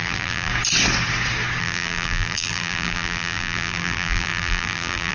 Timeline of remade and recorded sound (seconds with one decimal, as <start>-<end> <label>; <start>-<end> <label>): 0.0-0.5 remade; 0.5-1.6 recorded; 1.6-5.1 remade